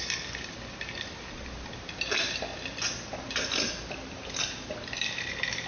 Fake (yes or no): no